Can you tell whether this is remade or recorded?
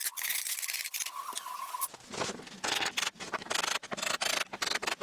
recorded